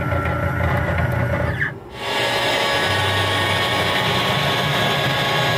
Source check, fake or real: real